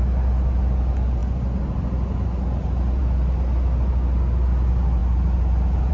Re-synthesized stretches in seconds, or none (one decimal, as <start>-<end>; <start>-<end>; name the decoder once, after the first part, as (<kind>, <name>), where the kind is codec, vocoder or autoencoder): none

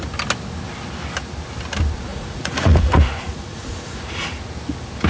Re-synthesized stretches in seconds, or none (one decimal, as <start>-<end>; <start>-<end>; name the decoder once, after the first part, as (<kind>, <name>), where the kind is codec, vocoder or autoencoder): 2.1-4.4 (vocoder, Vocos)

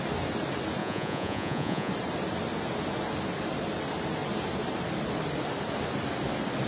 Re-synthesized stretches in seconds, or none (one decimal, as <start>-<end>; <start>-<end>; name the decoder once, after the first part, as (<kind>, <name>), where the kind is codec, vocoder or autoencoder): 0.8-1.9 (vocoder, Vocos)

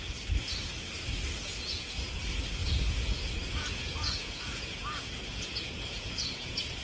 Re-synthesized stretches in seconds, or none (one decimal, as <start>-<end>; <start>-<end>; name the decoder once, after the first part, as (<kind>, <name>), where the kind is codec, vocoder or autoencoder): 1.5-2.2 (vocoder, Vocos); 2.6-6.8

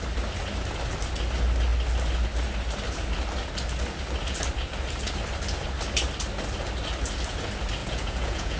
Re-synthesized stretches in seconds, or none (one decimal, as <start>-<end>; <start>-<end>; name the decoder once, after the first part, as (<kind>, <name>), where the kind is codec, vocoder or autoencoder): 7.8-8.6 (vocoder, Vocos)

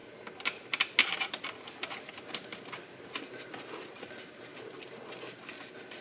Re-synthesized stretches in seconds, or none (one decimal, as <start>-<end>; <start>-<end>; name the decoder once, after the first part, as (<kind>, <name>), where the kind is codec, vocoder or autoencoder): none